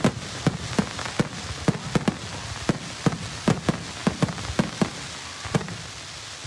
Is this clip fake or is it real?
real